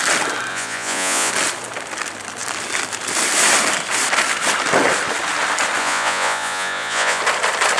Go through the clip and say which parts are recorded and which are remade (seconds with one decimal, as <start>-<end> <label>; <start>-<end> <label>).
0.0-0.5 recorded; 0.5-1.3 remade; 1.3-5.8 recorded; 5.8-7.2 remade; 7.2-7.8 recorded

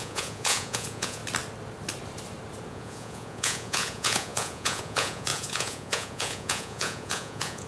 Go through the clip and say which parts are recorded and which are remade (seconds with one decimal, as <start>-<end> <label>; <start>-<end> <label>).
0.0-1.2 remade; 1.2-2.7 recorded; 2.7-7.7 remade